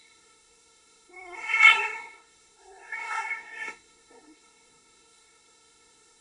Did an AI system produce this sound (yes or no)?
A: yes